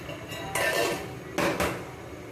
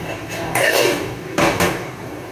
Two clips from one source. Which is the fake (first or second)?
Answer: second